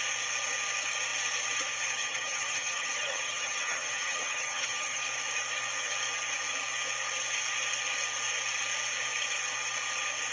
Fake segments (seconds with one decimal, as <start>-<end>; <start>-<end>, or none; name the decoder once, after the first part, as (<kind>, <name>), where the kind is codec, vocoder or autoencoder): 2.0-5.0 (vocoder, HiFi-GAN)

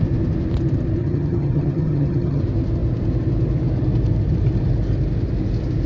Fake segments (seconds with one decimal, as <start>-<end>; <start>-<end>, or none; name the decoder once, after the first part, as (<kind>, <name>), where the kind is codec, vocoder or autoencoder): 1.0-2.4 (vocoder, HiFi-GAN)

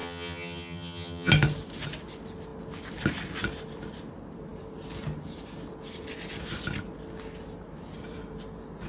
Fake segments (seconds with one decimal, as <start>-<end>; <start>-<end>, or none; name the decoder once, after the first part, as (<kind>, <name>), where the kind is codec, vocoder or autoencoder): 0.0-1.3 (vocoder, HiFi-GAN)

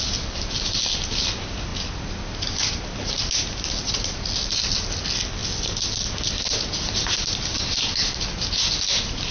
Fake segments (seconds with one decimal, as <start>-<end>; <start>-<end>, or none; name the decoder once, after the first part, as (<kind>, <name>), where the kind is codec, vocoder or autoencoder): none